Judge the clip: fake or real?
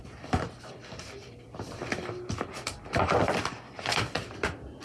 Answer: fake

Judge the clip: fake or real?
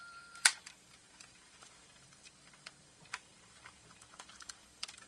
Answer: fake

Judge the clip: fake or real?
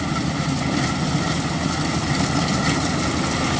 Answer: real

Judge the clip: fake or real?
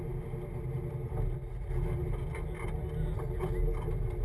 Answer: real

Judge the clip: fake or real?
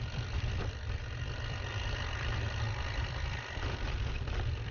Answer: fake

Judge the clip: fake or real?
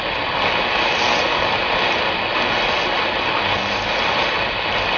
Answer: real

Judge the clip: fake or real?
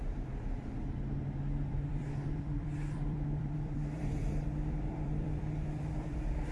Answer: fake